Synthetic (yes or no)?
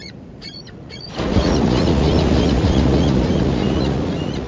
yes